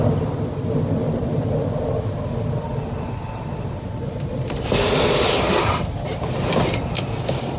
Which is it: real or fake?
real